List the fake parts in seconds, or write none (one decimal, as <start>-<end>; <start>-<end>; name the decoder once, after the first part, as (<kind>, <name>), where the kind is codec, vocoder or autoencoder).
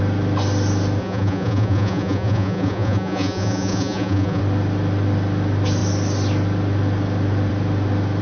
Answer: 1.0-4.4 (vocoder, Vocos)